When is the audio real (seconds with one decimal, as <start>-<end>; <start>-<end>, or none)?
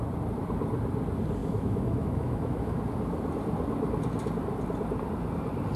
0.0-1.4; 2.8-5.8